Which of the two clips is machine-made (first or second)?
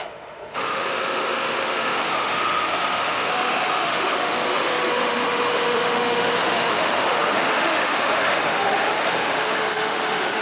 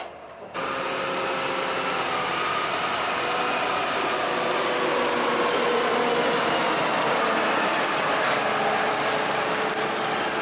first